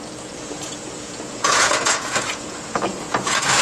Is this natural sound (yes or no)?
no